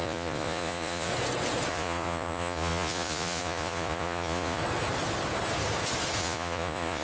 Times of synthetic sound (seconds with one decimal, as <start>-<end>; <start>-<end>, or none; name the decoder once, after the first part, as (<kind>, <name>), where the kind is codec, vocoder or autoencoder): 0.0-1.1 (vocoder, Vocos); 1.7-4.6; 6.2-7.0

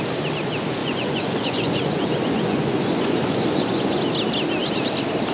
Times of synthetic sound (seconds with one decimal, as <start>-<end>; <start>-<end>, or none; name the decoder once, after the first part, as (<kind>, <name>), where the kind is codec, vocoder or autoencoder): 0.8-4.0 (vocoder, Vocos)

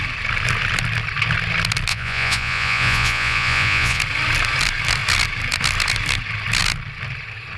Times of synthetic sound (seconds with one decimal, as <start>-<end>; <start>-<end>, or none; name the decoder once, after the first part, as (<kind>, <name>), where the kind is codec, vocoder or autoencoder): 1.9-4.0 (vocoder, Vocos)

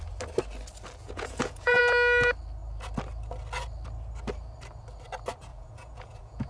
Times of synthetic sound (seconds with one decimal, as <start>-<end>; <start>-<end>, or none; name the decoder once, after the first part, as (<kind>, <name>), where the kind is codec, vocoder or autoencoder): 1.0-1.8 (vocoder, Vocos); 5.5-6.5

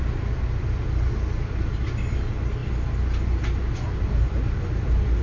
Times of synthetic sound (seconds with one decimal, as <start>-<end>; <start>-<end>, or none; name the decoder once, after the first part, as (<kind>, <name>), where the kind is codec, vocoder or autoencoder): none